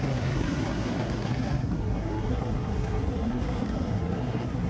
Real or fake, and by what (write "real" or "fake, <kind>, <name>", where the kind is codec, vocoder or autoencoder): fake, codec, SNAC